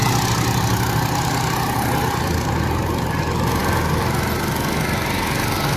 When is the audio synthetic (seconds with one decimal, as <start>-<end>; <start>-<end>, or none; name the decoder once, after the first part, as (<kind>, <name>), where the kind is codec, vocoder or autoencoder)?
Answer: 0.0-1.6 (vocoder, BigVGAN v2)